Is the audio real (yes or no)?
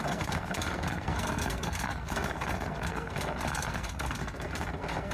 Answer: no